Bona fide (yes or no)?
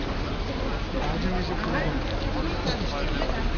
yes